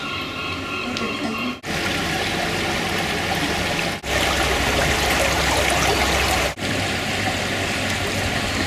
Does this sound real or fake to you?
real